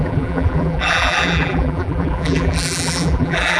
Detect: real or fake fake